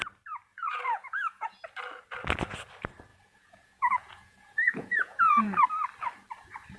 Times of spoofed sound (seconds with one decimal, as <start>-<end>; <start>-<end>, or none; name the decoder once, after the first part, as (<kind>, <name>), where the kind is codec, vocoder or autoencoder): 0.5-1.6 (vocoder, Vocos); 3.1-5.6